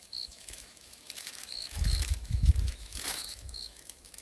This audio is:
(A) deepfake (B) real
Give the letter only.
A